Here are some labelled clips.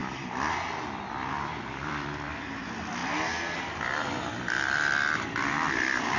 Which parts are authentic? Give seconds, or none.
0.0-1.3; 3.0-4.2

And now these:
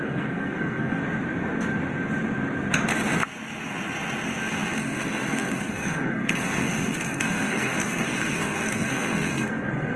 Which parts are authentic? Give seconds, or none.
1.0-4.8

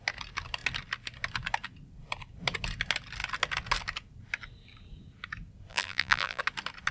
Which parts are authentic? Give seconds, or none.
0.0-5.7; 6.4-6.9

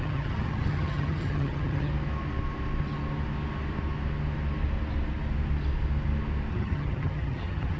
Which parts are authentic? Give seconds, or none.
1.9-6.5

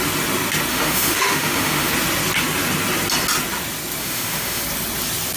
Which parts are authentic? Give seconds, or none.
0.0-0.7; 1.9-4.0; 4.6-5.4

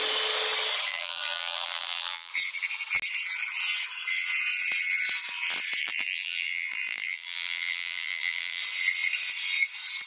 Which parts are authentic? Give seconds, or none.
0.0-0.9; 2.3-5.8; 8.6-10.1